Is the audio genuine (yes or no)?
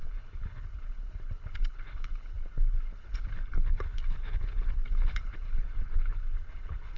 no